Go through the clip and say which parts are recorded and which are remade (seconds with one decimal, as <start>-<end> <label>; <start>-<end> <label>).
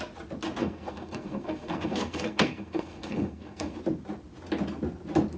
0.0-0.6 recorded; 0.6-3.8 remade; 3.8-5.4 recorded